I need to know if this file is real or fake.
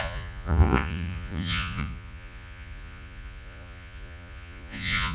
fake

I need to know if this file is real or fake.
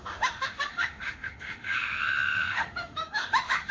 fake